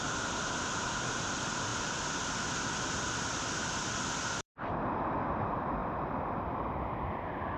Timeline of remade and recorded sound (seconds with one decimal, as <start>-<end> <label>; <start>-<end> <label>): 0.0-1.7 remade; 1.7-3.7 recorded; 3.7-5.8 remade; 5.8-7.1 recorded; 7.1-7.6 remade